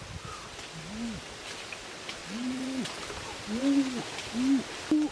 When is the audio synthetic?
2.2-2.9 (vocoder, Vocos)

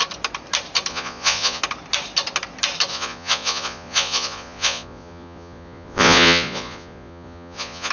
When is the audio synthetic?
0.9-1.6 (vocoder, Vocos); 2.9-7.9

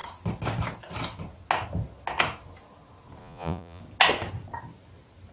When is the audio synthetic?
3.2-3.8 (vocoder, Vocos)

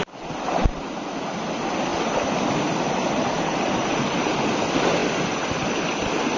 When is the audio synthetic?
none